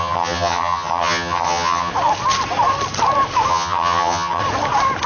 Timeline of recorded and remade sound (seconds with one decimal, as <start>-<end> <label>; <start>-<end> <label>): 0.0-1.9 remade; 1.9-3.5 recorded; 3.5-4.4 remade; 4.4-5.1 recorded